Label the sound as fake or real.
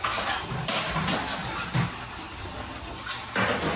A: real